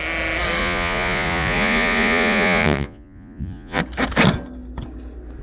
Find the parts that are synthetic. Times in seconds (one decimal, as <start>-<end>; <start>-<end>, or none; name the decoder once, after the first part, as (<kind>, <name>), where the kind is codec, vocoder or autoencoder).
0.6-3.8 (vocoder, Vocos)